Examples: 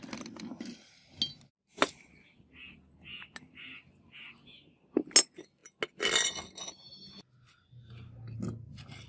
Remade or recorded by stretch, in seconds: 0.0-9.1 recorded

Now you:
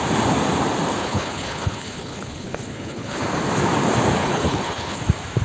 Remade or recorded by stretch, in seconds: 0.0-1.0 recorded; 1.0-3.2 remade; 3.2-4.2 recorded; 4.2-5.0 remade; 5.0-5.4 recorded

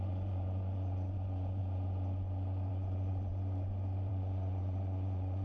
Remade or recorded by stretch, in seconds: 0.0-1.6 remade; 1.6-2.7 recorded; 2.7-3.3 remade; 3.3-4.1 recorded; 4.1-5.4 remade

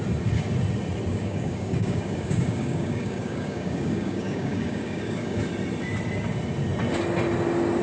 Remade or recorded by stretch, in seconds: 0.0-1.1 recorded; 1.1-5.4 remade; 5.4-7.8 recorded

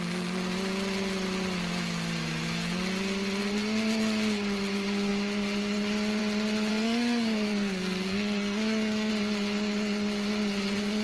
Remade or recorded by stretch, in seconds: 0.0-6.7 recorded; 6.7-9.1 remade; 9.1-11.0 recorded

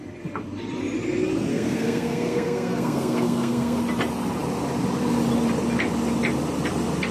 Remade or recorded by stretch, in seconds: 0.0-1.5 recorded; 1.5-3.8 remade; 3.8-7.1 recorded

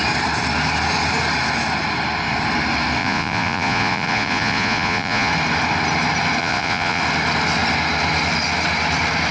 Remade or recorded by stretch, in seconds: 0.0-3.0 recorded; 3.0-5.3 remade; 5.3-6.4 recorded; 6.4-7.0 remade; 7.0-9.3 recorded